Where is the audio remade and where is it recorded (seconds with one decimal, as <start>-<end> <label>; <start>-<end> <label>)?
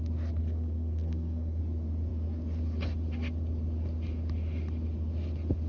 0.0-0.4 recorded; 0.4-1.6 remade; 1.6-5.7 recorded